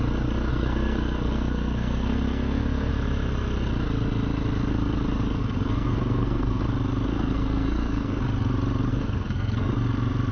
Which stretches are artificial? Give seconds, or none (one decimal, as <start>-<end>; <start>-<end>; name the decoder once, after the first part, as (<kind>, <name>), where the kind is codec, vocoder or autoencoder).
0.5-2.9 (codec, SNAC); 5.4-6.6; 7.1-8.2; 8.9-9.7